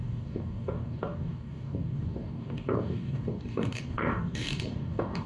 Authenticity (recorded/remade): remade